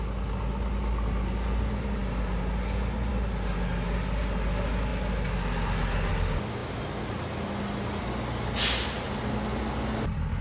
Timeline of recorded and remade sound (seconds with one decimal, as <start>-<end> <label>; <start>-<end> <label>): 0.0-10.4 recorded

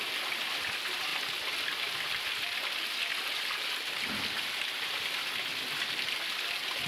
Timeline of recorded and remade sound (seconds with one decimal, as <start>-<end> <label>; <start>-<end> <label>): 0.0-6.9 recorded

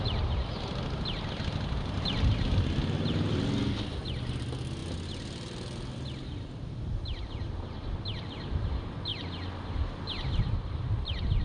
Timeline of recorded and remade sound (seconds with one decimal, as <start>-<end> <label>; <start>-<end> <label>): 0.0-11.4 recorded

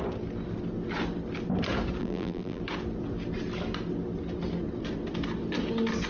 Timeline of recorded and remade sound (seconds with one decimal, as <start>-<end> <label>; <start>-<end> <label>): 0.0-2.0 recorded; 2.0-2.6 remade; 2.6-6.1 recorded

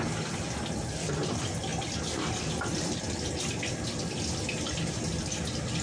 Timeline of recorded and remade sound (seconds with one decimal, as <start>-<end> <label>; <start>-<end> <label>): 0.0-5.8 recorded

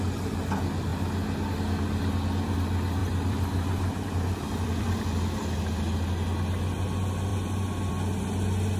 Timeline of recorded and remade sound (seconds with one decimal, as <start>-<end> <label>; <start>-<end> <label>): 0.0-3.0 recorded; 3.0-5.0 remade; 5.0-7.3 recorded; 7.3-7.9 remade; 7.9-8.8 recorded

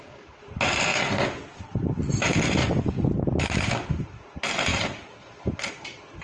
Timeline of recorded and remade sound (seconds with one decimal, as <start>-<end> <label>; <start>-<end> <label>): 0.0-0.9 remade; 0.9-2.2 recorded; 2.2-2.6 remade; 2.6-4.2 recorded; 4.2-6.2 remade

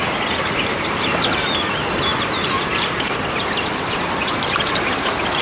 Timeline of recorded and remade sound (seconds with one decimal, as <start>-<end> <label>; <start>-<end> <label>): 0.0-5.4 remade